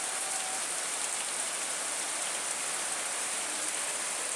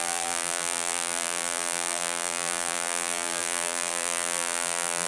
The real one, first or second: first